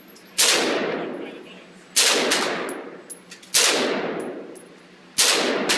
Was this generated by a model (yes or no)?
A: no